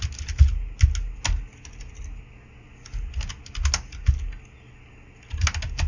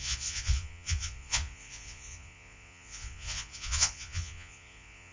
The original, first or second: first